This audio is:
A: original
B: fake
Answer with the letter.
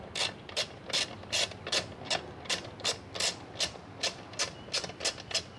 A